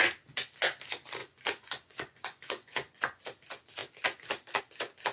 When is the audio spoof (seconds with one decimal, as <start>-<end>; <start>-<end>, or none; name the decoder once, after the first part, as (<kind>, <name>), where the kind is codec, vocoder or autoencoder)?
1.2-3.2 (vocoder, Vocos)